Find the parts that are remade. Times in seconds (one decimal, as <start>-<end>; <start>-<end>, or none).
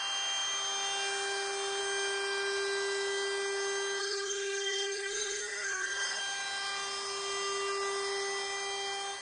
4.0-6.2